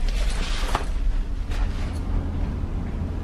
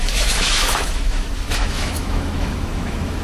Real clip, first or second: first